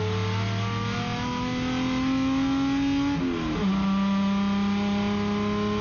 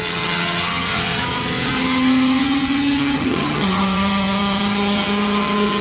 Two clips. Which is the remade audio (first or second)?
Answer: second